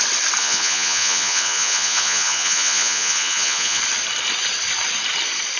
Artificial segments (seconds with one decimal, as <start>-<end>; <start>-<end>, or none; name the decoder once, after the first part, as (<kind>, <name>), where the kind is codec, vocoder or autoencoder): 0.4-3.8 (vocoder, Vocos)